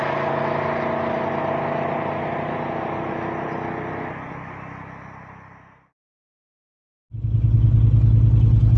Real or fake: real